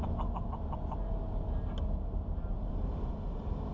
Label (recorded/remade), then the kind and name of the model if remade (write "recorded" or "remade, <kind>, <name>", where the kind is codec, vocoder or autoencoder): recorded